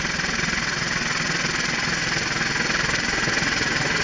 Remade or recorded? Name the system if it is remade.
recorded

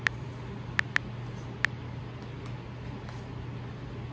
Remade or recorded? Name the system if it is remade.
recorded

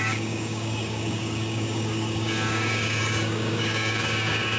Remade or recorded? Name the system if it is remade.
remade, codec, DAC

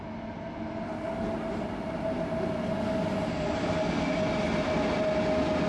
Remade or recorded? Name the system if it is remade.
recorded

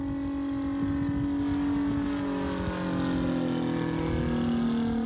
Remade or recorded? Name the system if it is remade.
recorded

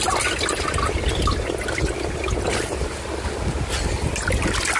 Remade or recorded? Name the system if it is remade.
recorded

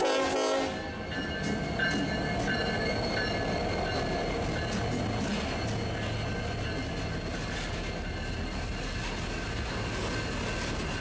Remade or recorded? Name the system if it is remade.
recorded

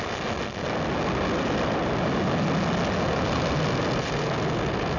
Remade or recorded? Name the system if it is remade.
recorded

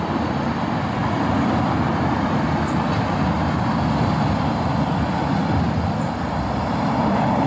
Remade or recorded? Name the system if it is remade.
recorded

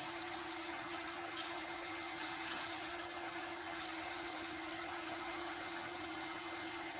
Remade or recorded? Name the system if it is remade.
remade, vocoder, HiFi-GAN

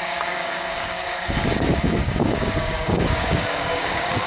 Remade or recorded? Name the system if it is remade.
remade, codec, DAC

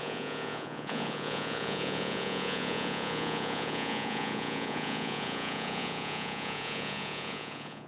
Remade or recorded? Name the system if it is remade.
remade, vocoder, Vocos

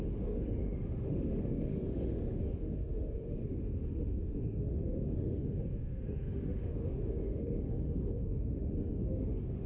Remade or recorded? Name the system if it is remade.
remade, autoencoder, DAC-VAE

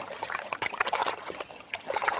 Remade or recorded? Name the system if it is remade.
remade, vocoder, HiFi-GAN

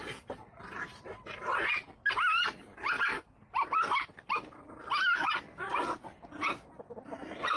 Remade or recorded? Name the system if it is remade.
recorded